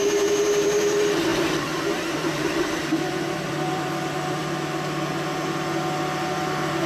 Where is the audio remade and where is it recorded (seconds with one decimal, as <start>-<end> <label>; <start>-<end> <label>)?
0.0-4.4 remade; 4.4-6.2 recorded; 6.2-6.9 remade